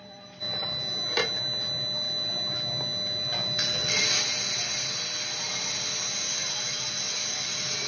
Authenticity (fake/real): real